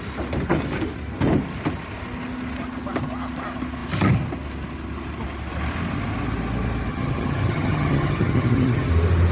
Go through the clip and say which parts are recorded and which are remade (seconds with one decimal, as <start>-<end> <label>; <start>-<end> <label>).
0.0-6.9 recorded; 6.9-8.9 remade; 8.9-9.3 recorded

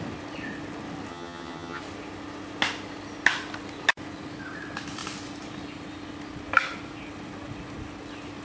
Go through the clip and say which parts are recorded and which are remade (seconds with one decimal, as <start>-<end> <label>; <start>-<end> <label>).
0.0-1.1 recorded; 1.1-1.8 remade; 1.8-8.4 recorded

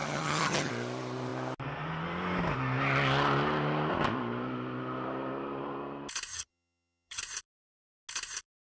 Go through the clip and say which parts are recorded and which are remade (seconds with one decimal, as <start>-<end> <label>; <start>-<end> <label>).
0.0-0.7 remade; 0.7-6.3 recorded; 6.3-7.2 remade; 7.2-8.6 recorded

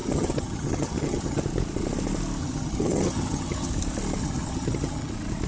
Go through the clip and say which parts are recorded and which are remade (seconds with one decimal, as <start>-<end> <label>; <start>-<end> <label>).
0.0-1.4 remade; 1.4-2.4 recorded; 2.4-3.7 remade; 3.7-4.2 recorded; 4.2-5.1 remade; 5.1-5.5 recorded

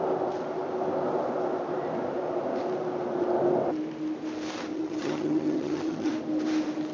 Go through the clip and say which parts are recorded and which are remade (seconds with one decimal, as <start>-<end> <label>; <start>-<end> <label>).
0.0-4.7 recorded; 4.7-6.1 remade; 6.1-6.9 recorded

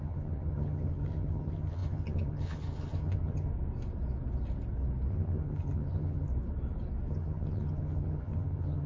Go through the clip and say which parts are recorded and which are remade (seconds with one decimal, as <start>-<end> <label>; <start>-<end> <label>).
0.0-3.5 remade; 3.5-5.1 recorded; 5.1-6.3 remade; 6.3-7.1 recorded; 7.1-8.9 remade